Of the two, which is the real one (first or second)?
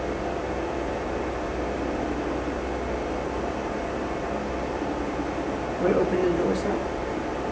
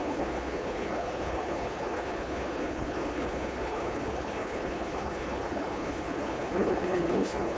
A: first